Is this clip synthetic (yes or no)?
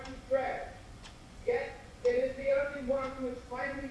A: yes